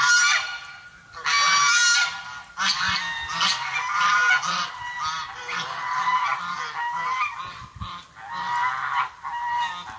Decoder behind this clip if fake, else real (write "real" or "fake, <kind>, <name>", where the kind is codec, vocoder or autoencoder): real